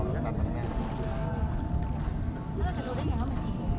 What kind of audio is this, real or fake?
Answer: real